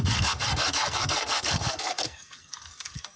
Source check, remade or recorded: remade